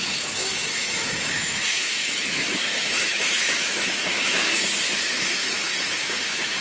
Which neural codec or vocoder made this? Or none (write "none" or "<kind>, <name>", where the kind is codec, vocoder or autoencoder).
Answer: autoencoder, DAC-VAE